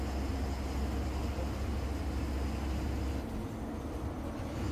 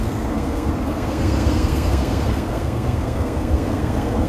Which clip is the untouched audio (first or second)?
first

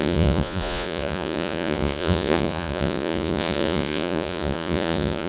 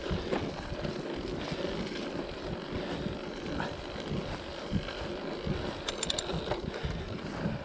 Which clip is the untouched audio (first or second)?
second